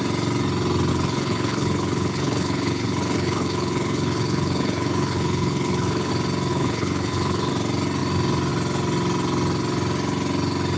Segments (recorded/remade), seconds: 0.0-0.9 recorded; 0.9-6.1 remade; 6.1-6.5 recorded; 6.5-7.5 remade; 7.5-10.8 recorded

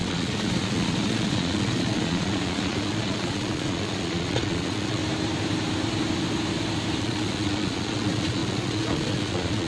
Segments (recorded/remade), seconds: 0.0-5.0 remade; 5.0-7.0 recorded; 7.0-9.7 remade

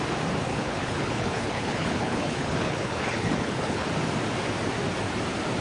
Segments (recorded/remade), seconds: 0.0-0.5 recorded; 0.5-3.9 remade; 3.9-5.6 recorded